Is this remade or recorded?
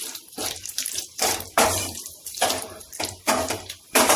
remade